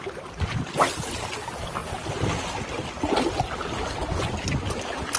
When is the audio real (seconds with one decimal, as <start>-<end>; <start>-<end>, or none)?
0.0-5.2